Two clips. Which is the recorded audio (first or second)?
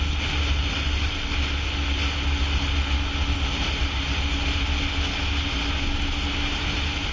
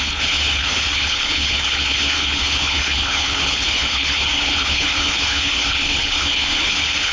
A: first